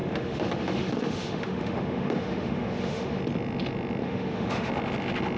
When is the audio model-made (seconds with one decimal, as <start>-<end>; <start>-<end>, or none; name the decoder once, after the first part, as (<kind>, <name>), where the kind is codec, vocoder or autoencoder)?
0.0-3.2 (autoencoder, DAC-VAE); 4.0-4.7